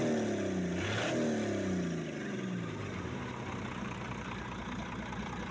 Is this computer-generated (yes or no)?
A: no